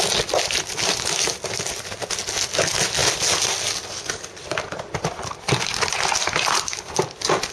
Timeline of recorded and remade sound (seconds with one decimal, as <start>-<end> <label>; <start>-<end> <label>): 0.0-7.5 recorded

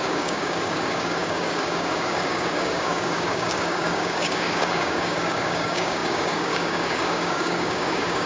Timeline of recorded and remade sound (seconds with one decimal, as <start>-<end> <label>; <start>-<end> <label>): 0.0-8.3 remade

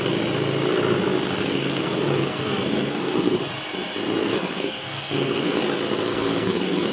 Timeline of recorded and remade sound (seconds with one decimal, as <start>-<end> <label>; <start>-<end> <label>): 0.0-1.5 recorded; 1.5-3.4 remade; 3.4-4.2 recorded; 4.2-5.6 remade; 5.6-6.1 recorded; 6.1-6.9 remade

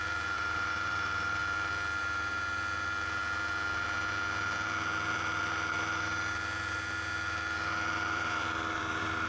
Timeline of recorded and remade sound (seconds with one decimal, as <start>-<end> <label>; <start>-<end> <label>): 0.0-1.4 remade; 1.4-2.0 recorded; 2.0-3.2 remade; 3.2-5.1 recorded; 5.1-9.3 remade